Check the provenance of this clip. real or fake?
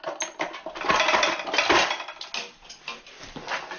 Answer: real